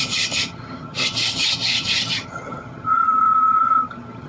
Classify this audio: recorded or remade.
remade